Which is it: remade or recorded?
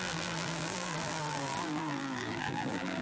remade